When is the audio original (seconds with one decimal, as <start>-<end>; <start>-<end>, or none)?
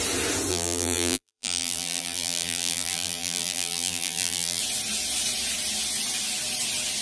0.0-0.5; 4.6-7.0